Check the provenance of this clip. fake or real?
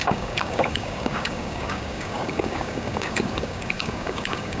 fake